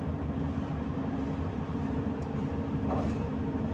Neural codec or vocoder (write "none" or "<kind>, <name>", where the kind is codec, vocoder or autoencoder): vocoder, BigVGAN v2